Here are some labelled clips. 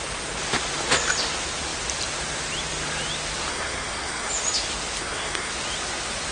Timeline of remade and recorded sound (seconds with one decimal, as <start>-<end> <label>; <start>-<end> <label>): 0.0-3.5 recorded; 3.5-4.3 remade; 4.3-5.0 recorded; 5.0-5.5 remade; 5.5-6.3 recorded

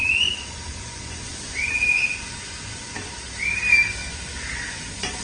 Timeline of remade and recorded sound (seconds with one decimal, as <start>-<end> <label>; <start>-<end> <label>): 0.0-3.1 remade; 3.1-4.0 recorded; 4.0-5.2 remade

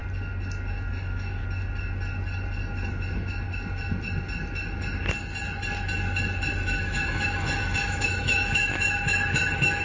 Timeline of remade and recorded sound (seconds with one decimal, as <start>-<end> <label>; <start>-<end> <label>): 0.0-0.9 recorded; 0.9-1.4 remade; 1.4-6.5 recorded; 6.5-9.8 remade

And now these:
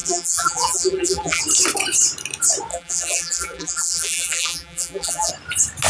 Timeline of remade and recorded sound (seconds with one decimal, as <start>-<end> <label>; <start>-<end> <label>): 0.0-1.4 remade; 1.4-2.7 recorded; 2.7-5.3 remade; 5.3-5.9 recorded